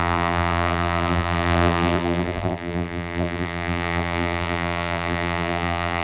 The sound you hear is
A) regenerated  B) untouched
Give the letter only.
A